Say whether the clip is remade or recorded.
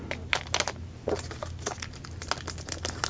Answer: recorded